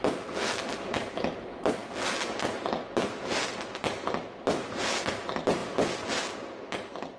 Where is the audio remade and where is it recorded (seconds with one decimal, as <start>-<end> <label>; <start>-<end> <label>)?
0.0-7.2 recorded